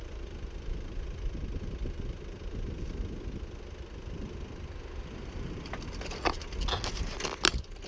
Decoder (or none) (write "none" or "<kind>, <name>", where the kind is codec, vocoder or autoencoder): none